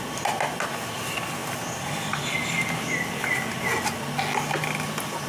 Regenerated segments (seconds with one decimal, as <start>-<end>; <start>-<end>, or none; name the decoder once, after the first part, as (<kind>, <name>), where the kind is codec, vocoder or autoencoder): none